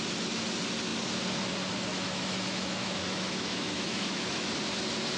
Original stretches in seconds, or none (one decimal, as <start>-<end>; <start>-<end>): 0.0-1.9; 4.5-5.2